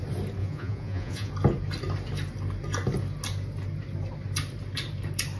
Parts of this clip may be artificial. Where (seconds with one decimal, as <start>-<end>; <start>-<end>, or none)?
0.4-1.3